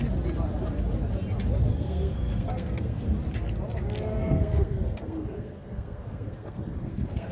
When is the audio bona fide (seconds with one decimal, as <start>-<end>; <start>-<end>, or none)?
0.0-1.7; 3.0-4.2